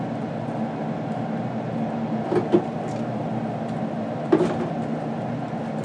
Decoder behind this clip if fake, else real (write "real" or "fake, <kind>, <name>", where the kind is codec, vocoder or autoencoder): real